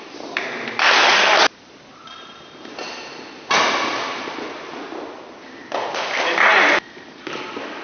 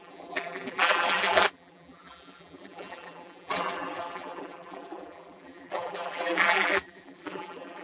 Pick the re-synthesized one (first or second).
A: second